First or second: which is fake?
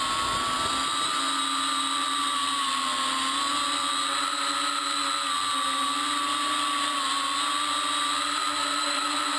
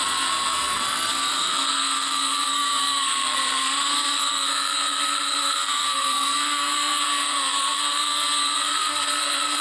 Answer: second